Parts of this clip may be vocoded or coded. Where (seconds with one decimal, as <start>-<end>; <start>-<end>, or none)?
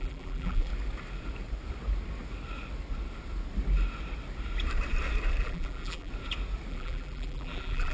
0.0-0.7; 5.4-6.1; 6.7-7.9